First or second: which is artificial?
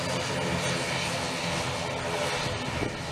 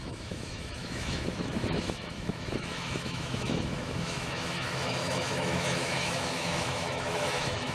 second